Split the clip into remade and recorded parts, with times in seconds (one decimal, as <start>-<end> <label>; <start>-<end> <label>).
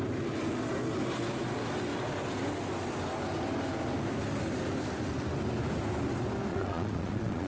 0.0-6.5 recorded; 6.5-7.5 remade